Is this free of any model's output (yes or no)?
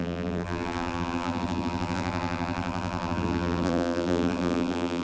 no